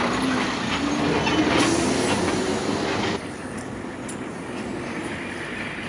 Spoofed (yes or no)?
no